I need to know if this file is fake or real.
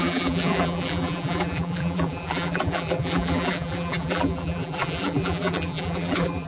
fake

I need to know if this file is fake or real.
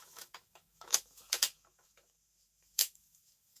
fake